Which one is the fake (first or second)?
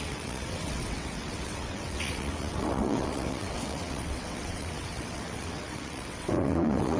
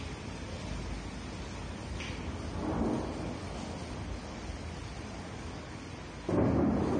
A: first